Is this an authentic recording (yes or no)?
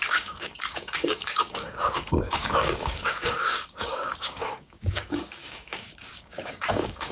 no